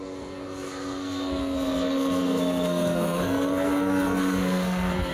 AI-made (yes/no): yes